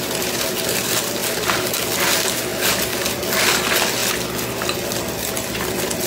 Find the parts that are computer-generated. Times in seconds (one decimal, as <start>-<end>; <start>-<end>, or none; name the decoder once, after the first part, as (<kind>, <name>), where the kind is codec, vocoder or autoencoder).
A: none